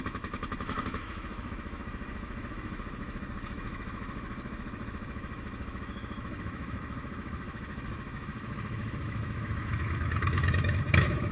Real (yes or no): no